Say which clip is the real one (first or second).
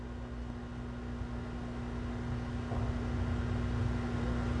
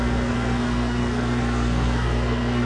first